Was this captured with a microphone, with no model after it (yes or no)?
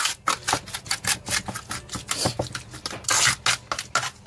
yes